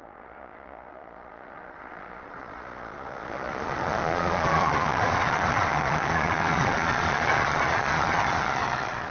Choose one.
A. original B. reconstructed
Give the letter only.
B